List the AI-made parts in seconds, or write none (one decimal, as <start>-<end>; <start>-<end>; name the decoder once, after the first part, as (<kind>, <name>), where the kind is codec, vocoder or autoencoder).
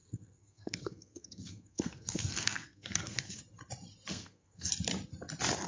0.0-3.4 (codec, SNAC); 4.1-4.7